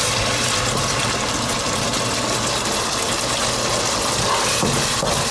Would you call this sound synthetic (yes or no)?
no